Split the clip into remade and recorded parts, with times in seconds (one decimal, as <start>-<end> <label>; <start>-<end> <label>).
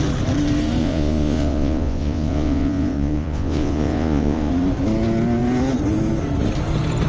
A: 0.0-0.8 recorded; 0.8-4.5 remade; 4.5-7.1 recorded